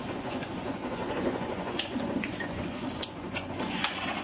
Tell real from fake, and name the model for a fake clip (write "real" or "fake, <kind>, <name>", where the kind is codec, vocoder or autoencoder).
fake, vocoder, Vocos